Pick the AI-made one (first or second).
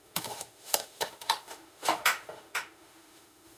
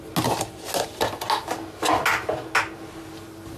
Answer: first